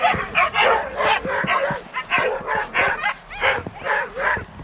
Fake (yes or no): yes